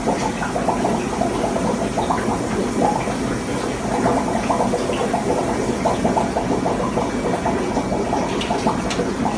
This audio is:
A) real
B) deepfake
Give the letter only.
A